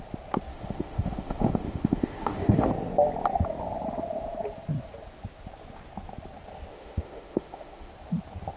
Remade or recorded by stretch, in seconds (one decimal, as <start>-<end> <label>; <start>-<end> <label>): 0.0-0.5 recorded; 0.5-2.7 remade; 2.7-6.7 recorded; 6.7-7.9 remade; 7.9-8.6 recorded